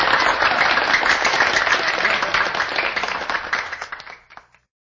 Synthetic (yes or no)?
no